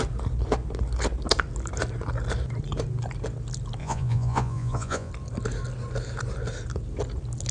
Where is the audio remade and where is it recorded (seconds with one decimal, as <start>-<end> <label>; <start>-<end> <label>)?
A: 0.0-3.8 recorded; 3.8-5.1 remade; 5.1-7.5 recorded